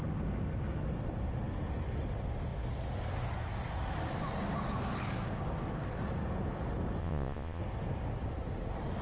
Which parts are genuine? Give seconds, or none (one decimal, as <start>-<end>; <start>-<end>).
0.0-7.0; 7.6-9.0